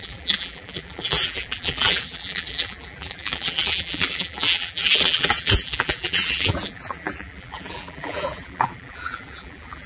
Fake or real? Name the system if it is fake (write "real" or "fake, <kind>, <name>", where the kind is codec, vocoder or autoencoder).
fake, vocoder, BigVGAN v2